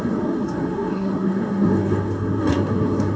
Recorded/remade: remade